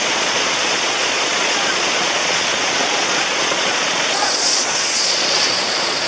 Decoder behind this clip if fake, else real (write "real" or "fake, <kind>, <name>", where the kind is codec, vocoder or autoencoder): fake, vocoder, Vocos